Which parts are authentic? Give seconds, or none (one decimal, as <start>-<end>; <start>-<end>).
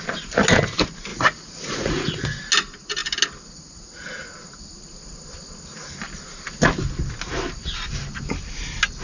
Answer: 0.0-1.1; 2.4-9.0